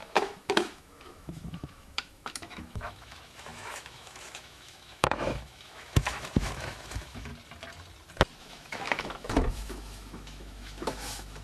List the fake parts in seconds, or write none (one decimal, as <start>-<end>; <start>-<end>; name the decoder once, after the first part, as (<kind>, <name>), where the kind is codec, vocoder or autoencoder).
0.0-7.3 (autoencoder, DAC-VAE); 8.4-11.4

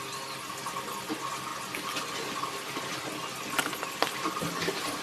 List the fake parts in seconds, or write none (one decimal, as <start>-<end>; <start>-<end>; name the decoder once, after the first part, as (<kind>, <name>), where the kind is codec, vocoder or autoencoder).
none

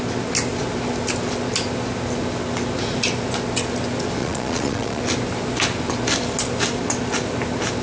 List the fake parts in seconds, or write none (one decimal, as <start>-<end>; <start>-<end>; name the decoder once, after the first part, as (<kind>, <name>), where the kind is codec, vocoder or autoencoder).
4.2-5.0 (vocoder, Vocos)